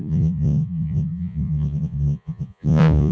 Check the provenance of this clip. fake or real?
fake